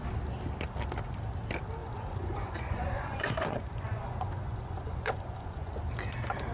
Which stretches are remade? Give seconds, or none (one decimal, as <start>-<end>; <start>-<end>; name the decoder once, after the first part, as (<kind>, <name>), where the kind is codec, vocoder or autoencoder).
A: 1.8-5.7 (vocoder, Vocos)

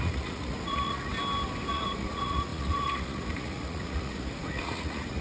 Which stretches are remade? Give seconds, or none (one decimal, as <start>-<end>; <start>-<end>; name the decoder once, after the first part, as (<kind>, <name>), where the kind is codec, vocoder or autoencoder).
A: 0.0-1.1 (vocoder, Vocos); 1.7-5.2

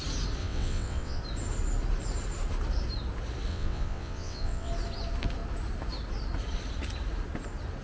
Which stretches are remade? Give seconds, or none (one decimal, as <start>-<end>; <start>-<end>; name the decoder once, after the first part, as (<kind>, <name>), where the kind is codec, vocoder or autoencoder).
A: 0.4-1.2 (vocoder, WaveNeXt); 3.5-4.7

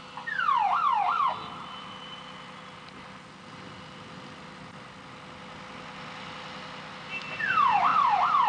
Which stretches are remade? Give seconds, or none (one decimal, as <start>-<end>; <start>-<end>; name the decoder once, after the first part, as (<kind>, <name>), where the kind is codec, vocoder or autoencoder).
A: none

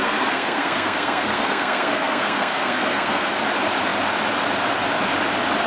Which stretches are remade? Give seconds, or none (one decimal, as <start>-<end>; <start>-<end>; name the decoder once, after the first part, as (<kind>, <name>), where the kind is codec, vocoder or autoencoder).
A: 0.0-3.4 (codec, SNAC)

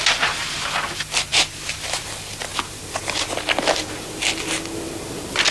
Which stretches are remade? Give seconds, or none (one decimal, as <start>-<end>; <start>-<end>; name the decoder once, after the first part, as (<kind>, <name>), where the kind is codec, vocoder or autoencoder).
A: 1.3-2.0 (vocoder, BigVGAN v2)

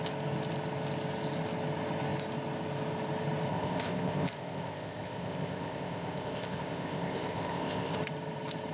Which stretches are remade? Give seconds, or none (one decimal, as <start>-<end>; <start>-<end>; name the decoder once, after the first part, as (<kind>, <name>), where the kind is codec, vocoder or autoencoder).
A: 3.5-8.0 (codec, ZipCodec)